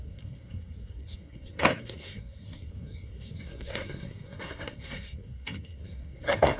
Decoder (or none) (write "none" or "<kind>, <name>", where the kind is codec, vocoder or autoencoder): codec, SNAC